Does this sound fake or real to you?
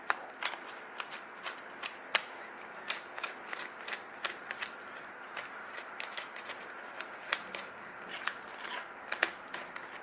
real